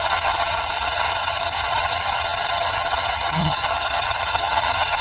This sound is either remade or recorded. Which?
remade